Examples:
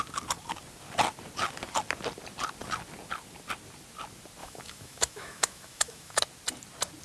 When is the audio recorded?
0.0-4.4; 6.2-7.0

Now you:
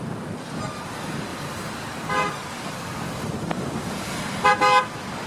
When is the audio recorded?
0.0-1.3; 4.5-5.3

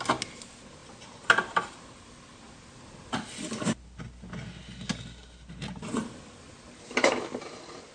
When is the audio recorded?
0.0-7.9

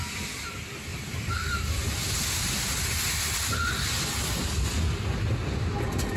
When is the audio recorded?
0.0-0.9; 1.8-6.2

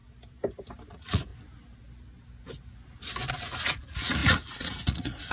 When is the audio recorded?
0.0-0.9; 1.3-3.3

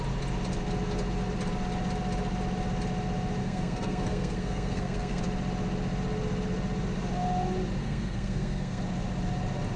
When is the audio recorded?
0.0-3.4; 5.2-7.8; 8.8-9.8

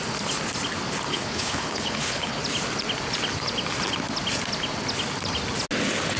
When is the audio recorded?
0.0-1.1; 2.4-6.2

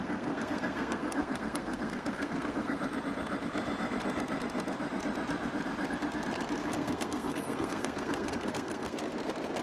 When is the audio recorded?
2.8-6.6; 9.0-9.6